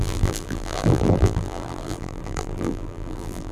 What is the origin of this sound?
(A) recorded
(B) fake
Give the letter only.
B